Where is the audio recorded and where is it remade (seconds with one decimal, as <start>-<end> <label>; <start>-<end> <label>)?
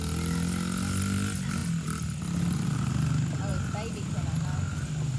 0.0-5.2 recorded